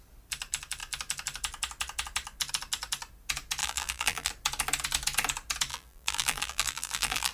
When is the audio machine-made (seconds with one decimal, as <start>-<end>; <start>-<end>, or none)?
3.6-4.3; 5.7-7.3